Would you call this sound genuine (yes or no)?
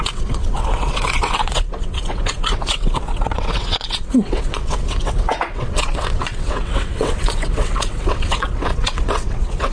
no